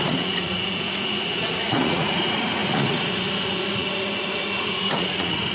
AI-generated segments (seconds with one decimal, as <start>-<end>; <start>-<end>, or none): 0.0-5.5